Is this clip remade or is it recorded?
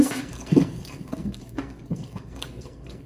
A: remade